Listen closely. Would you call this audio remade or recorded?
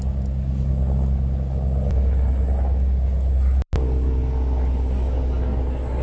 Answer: recorded